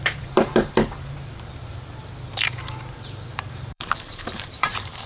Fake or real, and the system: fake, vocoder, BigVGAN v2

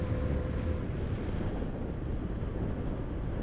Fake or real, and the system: real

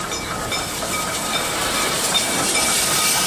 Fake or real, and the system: fake, vocoder, BigVGAN v2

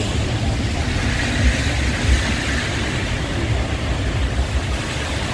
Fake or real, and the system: real